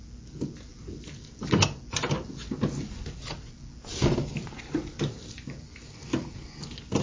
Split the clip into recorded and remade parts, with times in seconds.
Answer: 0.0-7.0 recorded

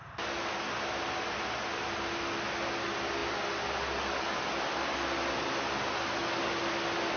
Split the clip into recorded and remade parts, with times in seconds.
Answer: 0.0-7.2 recorded

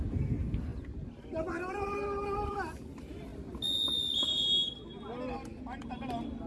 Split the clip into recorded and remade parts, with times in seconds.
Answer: 0.0-6.5 recorded